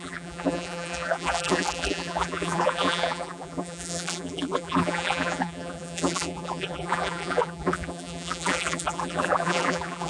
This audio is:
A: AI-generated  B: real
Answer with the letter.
A